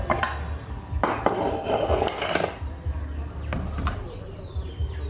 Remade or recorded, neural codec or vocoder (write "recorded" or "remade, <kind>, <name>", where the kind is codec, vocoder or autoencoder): recorded